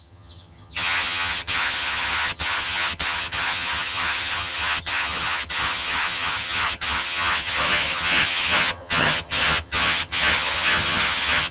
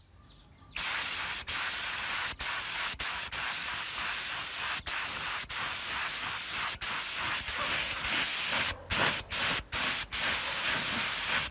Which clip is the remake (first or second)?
first